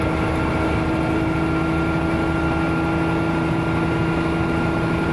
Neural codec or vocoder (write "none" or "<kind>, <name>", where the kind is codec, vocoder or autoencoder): none